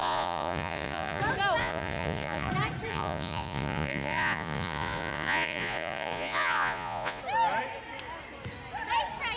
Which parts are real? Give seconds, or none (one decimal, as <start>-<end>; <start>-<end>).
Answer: 1.2-1.6; 2.5-2.9; 7.2-9.4